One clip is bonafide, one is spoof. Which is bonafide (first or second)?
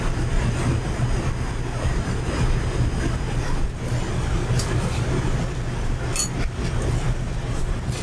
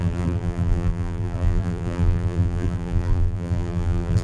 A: first